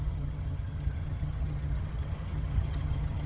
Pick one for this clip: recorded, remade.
remade